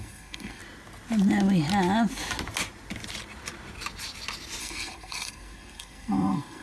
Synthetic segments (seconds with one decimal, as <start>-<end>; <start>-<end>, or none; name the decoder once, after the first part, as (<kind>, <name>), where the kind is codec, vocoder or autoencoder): 0.0-0.6 (codec, SNAC); 4.6-6.6